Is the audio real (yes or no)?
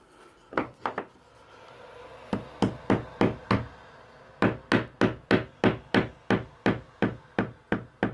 yes